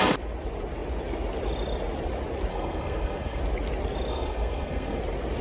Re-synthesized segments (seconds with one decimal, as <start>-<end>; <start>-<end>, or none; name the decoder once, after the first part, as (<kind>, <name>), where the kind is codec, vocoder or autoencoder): 2.5-3.4 (codec, SNAC); 4.1-5.0